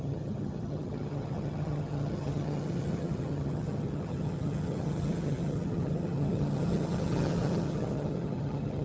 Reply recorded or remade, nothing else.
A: remade